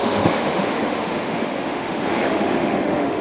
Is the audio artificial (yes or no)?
yes